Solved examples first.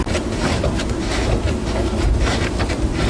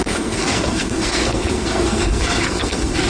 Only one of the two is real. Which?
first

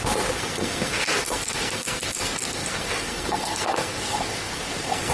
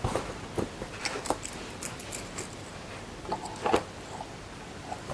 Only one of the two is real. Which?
second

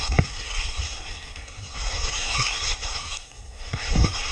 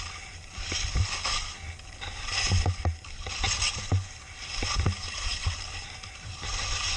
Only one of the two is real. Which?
second